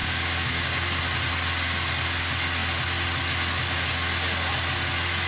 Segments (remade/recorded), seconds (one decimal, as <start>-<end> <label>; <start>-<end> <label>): 0.0-1.0 remade; 1.0-5.3 recorded

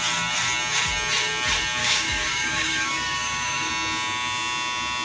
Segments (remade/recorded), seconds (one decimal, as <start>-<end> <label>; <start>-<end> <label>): 0.0-1.8 recorded; 1.8-3.7 remade; 3.7-5.0 recorded